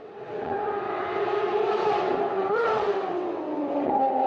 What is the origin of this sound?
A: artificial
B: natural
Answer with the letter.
A